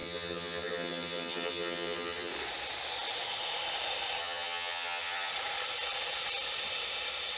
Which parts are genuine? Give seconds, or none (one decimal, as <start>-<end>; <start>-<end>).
2.3-4.2; 5.3-7.4

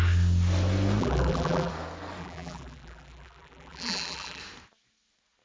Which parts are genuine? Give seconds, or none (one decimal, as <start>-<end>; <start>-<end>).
0.0-1.0; 1.7-2.2; 4.4-5.4

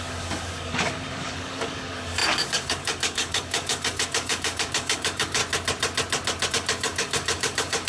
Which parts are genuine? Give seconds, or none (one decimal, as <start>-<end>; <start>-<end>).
5.4-6.5

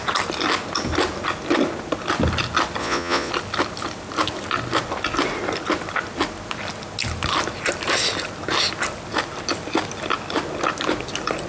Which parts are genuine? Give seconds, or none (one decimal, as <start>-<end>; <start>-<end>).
0.0-2.8; 3.3-11.5

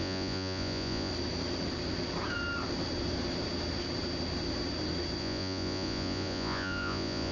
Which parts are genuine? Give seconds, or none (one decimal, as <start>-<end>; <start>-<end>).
1.1-5.2

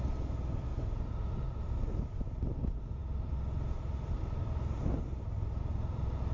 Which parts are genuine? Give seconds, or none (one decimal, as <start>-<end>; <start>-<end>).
0.0-6.3

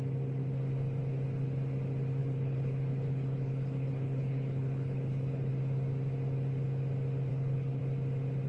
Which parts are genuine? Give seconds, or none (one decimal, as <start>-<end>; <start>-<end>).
0.0-2.2; 5.5-7.3; 7.8-8.5